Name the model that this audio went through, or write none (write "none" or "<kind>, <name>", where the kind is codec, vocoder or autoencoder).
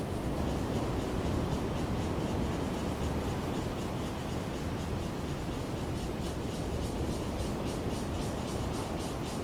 none